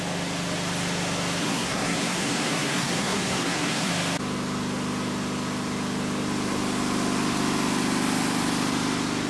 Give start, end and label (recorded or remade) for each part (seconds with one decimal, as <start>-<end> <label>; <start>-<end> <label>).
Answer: 0.0-1.4 recorded; 1.4-3.9 remade; 3.9-9.3 recorded